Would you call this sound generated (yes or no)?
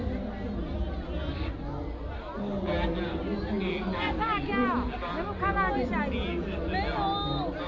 no